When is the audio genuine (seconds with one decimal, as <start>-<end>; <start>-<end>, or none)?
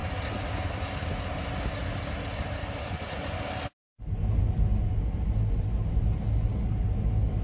0.0-7.4